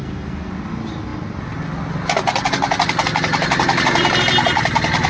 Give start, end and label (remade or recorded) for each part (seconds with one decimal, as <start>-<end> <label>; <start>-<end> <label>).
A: 0.0-0.5 remade; 0.5-5.1 recorded